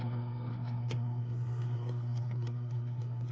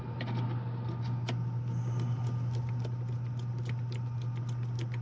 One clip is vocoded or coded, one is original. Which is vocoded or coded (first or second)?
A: first